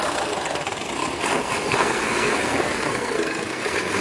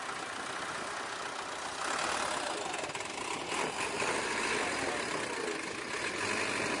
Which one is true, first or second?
second